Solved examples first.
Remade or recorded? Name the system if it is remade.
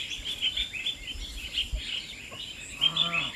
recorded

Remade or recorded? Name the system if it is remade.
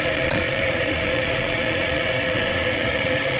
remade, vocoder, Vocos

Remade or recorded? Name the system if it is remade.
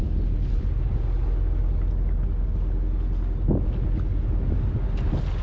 recorded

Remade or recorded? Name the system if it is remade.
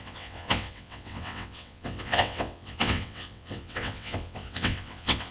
remade, vocoder, WaveNeXt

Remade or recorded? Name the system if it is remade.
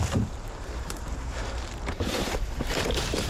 remade, vocoder, BigVGAN v2